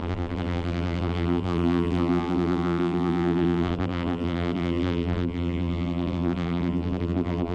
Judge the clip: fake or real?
fake